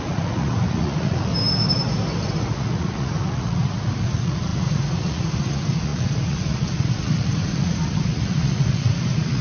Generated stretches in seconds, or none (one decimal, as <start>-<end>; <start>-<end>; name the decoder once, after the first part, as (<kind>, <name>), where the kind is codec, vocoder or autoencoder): 0.0-1.3 (vocoder, Vocos); 2.4-9.4